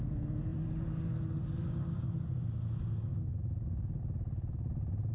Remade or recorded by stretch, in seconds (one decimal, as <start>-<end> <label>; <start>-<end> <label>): 0.0-3.1 recorded; 3.1-4.0 remade; 4.0-5.1 recorded